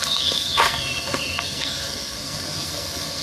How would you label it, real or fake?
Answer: fake